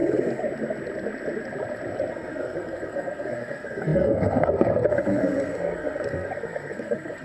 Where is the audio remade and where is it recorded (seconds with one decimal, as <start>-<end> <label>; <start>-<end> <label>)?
0.0-2.1 recorded; 2.1-7.2 remade